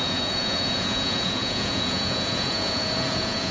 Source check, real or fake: fake